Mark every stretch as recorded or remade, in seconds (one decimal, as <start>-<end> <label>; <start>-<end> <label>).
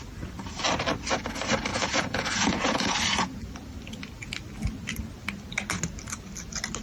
0.0-1.7 recorded; 1.7-2.9 remade; 2.9-6.8 recorded